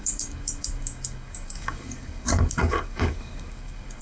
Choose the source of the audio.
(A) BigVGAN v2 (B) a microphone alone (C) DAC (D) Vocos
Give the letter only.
C